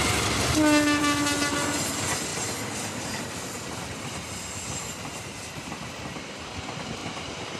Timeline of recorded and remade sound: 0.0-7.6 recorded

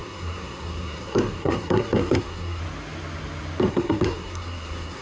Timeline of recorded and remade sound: 0.0-2.6 remade; 2.6-3.7 recorded; 3.7-5.0 remade

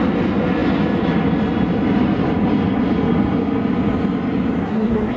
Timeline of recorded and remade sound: 0.0-4.6 recorded; 4.6-5.2 remade

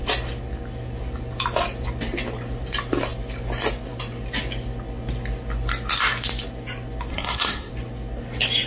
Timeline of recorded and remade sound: 0.0-7.1 recorded; 7.1-7.7 remade; 7.7-8.7 recorded